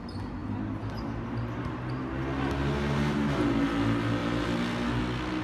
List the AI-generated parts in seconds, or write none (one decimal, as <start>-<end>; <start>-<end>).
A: none